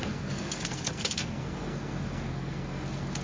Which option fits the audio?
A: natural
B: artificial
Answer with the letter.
B